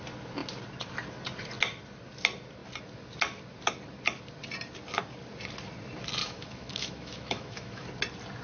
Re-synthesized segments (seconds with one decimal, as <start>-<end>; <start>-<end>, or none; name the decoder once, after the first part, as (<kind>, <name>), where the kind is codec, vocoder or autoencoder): 6.2-7.8 (autoencoder, DAC-VAE)